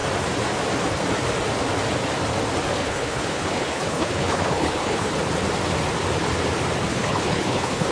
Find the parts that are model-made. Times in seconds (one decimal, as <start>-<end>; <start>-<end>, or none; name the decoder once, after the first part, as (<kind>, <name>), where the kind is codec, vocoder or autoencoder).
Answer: 2.8-5.1 (codec, HILCodec); 6.9-7.9